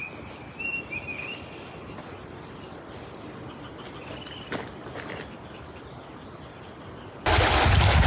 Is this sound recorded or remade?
recorded